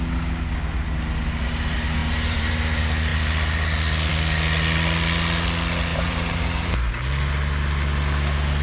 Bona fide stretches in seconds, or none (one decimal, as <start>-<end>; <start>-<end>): 0.0-2.0; 2.5-5.9; 6.9-8.6